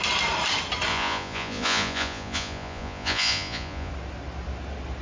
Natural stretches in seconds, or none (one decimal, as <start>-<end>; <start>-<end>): 0.0-0.9; 3.9-5.0